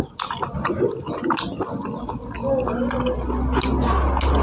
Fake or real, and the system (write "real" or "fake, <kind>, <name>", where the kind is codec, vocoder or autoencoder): real